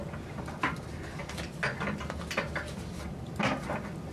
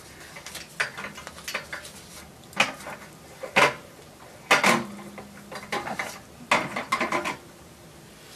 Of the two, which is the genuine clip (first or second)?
second